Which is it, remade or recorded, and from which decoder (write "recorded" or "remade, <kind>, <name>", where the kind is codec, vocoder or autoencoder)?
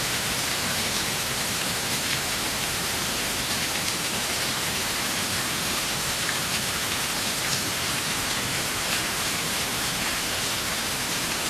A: remade, autoencoder, DAC-VAE